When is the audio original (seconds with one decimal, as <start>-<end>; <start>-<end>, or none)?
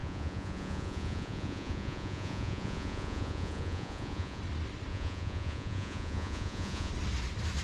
4.4-4.9; 6.9-7.6